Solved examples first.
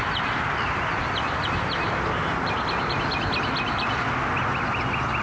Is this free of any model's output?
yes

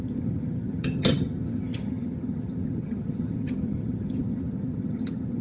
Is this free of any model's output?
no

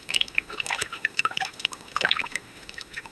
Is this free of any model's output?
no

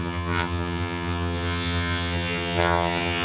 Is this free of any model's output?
no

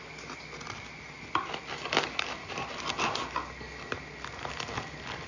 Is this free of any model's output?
yes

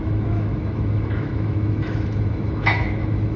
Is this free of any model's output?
no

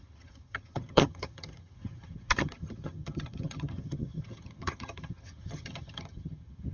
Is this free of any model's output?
no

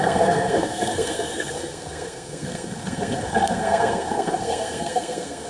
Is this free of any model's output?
no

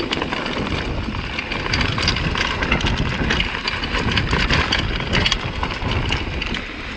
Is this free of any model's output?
yes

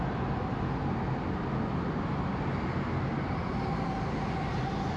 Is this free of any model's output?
yes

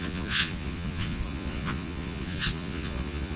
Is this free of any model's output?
no